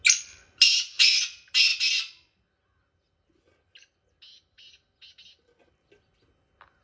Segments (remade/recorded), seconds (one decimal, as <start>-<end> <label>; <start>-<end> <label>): 0.0-6.8 recorded